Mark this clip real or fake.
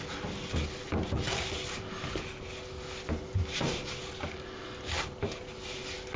real